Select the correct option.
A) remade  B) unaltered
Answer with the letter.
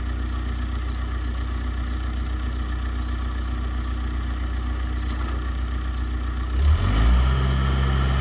B